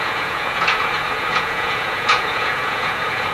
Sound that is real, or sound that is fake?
fake